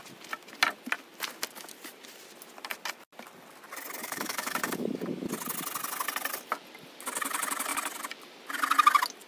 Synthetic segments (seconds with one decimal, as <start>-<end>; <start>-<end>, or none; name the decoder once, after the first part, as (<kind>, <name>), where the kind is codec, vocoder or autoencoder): 4.0-5.3 (codec, DAC)